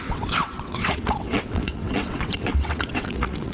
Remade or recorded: remade